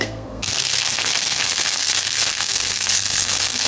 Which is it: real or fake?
fake